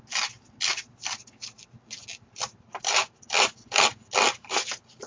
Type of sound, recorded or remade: recorded